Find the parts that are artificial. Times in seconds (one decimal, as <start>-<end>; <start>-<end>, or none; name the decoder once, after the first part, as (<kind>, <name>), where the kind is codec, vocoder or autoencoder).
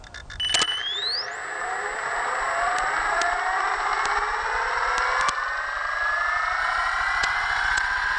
6.6-8.2 (vocoder, WaveNeXt)